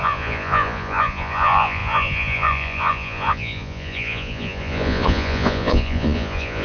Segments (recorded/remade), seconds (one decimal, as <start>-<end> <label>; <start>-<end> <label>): 0.0-6.6 remade